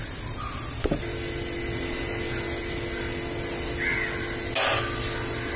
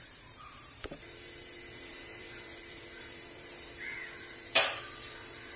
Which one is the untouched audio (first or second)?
first